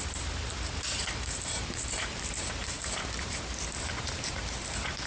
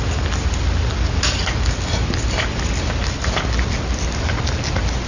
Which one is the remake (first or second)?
first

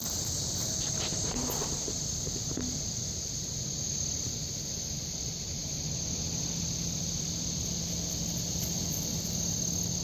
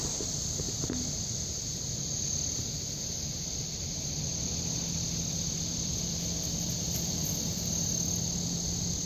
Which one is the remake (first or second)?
first